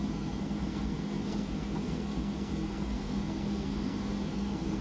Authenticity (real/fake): fake